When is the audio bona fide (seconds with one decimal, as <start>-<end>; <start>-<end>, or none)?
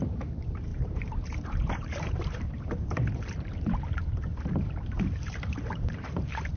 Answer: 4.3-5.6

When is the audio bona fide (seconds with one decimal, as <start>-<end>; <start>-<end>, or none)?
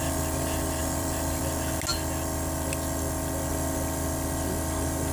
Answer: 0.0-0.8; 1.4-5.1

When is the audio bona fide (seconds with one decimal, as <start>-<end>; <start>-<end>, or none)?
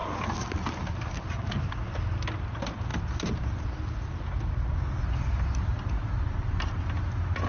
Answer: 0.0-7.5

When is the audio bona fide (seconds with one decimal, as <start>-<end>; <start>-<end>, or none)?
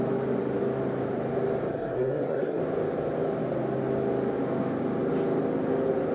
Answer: 0.0-1.7; 2.6-6.1